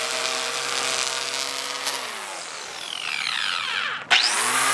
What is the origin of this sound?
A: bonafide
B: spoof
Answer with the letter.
A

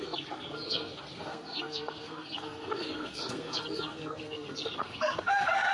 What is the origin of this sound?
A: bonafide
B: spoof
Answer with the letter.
B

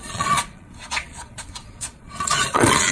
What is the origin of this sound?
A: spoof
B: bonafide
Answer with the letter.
A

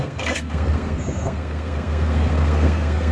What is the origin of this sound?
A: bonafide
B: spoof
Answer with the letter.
B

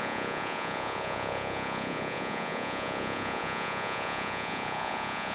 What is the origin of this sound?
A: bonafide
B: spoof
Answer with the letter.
B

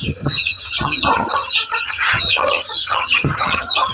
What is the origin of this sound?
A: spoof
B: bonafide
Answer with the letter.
A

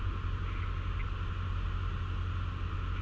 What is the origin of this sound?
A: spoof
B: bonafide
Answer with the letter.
B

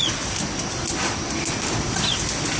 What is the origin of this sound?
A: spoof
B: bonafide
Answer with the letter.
B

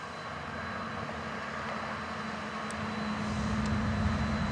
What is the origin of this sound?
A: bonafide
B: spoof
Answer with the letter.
A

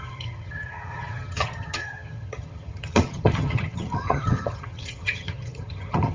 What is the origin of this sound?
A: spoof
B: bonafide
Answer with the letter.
A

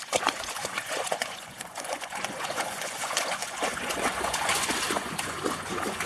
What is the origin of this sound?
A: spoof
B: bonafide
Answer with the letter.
A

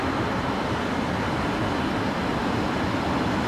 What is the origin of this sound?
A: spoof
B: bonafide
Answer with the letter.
B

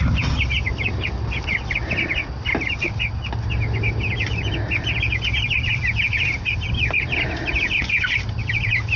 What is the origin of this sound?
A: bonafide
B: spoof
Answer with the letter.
A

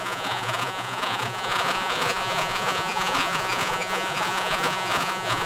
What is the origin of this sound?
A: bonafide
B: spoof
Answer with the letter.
B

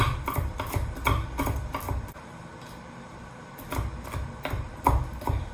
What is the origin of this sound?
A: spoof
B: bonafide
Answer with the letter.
B